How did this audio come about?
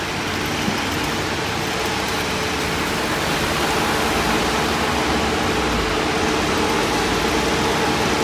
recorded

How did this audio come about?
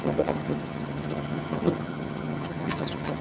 remade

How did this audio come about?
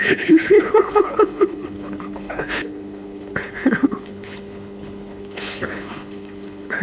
remade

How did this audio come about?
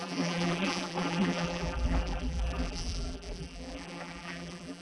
remade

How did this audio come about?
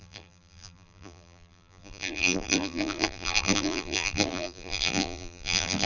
remade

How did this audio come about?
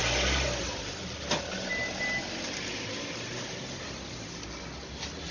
recorded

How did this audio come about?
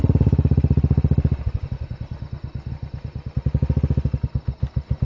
recorded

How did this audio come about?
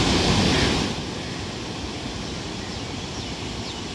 recorded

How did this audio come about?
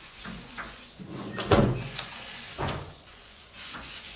remade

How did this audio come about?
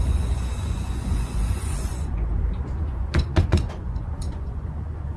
remade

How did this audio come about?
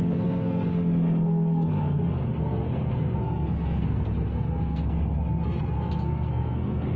remade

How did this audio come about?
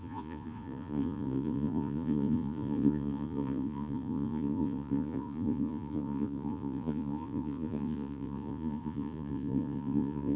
remade